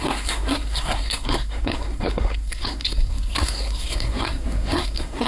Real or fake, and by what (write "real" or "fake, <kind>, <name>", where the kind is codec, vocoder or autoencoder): fake, codec, SNAC